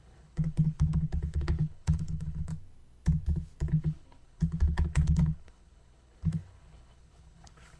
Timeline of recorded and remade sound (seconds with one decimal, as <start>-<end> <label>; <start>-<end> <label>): 0.0-2.5 remade; 2.5-3.7 recorded; 3.7-7.8 remade